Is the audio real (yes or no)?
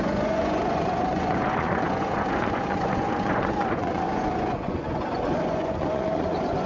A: no